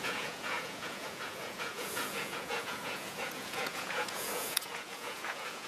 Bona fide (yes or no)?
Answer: no